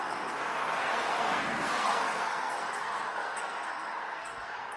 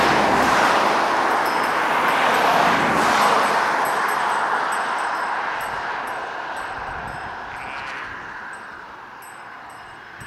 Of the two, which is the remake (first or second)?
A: first